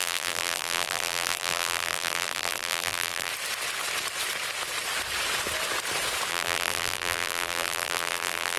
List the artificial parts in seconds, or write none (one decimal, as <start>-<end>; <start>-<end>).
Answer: 0.0-3.3; 6.3-8.6